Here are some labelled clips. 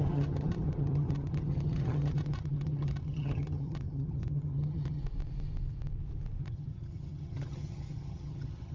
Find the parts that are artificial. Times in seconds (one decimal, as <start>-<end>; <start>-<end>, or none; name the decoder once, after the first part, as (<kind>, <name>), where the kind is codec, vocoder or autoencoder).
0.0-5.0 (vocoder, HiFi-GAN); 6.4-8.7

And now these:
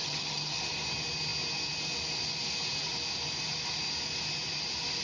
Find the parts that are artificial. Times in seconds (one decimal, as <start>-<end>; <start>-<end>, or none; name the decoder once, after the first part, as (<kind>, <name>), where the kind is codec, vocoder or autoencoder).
0.0-0.6 (vocoder, HiFi-GAN)

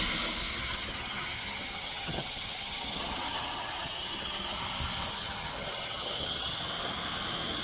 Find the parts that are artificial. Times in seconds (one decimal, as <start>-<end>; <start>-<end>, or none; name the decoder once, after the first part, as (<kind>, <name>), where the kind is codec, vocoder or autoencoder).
0.5-4.6 (vocoder, HiFi-GAN); 5.1-6.6

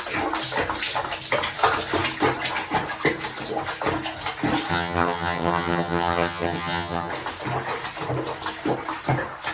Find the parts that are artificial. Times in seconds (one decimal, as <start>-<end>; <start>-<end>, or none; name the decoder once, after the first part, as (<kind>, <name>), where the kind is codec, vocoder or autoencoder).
4.7-7.1 (vocoder, HiFi-GAN)

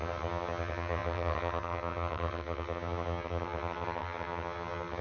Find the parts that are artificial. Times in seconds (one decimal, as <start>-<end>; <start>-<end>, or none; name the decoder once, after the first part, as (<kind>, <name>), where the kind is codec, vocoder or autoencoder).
0.0-5.0 (vocoder, HiFi-GAN)